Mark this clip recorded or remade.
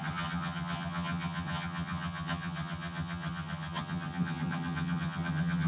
remade